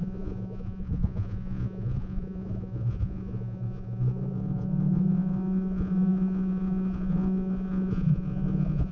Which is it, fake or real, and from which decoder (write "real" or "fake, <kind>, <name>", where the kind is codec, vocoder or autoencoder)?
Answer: fake, vocoder, Vocos